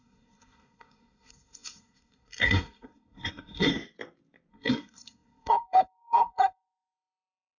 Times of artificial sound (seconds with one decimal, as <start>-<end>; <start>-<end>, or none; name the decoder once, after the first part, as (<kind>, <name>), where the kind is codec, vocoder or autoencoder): 0.0-3.7 (codec, SNAC); 4.5-7.6